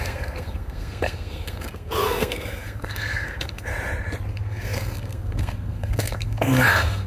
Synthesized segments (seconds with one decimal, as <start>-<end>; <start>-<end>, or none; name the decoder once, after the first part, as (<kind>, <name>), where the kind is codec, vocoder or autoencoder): 0.0-3.7 (codec, SNAC); 4.3-7.1